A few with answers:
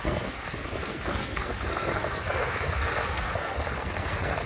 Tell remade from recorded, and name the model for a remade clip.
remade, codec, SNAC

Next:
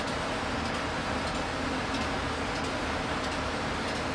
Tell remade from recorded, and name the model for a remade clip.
recorded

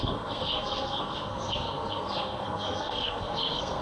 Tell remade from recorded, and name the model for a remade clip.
remade, codec, SNAC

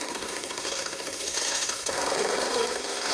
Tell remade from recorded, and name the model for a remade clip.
remade, codec, SNAC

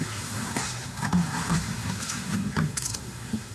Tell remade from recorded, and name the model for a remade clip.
remade, codec, SNAC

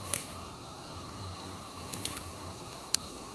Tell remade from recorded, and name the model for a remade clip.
remade, codec, SNAC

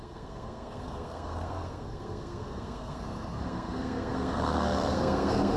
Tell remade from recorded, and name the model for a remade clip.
remade, codec, SNAC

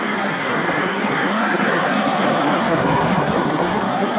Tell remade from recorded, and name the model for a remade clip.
remade, codec, SNAC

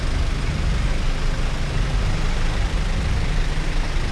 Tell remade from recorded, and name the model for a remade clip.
recorded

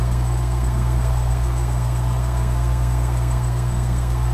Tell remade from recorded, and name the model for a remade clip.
remade, codec, SNAC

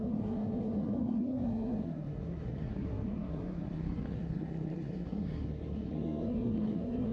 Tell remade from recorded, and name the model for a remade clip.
remade, codec, SNAC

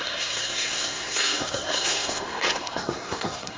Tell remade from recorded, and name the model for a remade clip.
remade, codec, SNAC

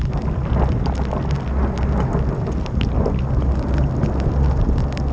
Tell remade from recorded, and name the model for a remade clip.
recorded